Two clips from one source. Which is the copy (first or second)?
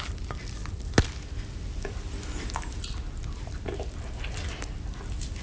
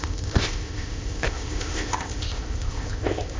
second